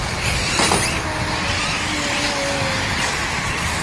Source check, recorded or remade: recorded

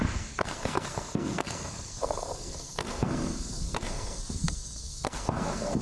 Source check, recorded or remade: remade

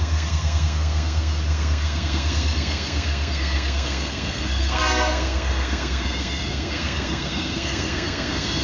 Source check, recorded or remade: remade